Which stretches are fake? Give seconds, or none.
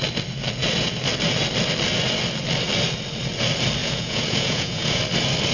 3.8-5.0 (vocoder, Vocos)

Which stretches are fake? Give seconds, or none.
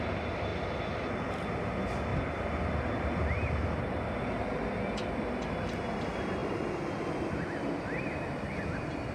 none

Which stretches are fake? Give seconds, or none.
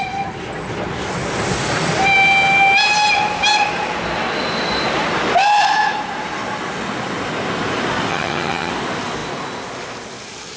8.1-8.7 (vocoder, HiFi-GAN)